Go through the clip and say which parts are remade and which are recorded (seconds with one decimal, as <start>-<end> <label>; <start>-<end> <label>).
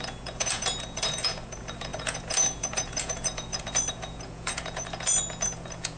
0.0-6.0 remade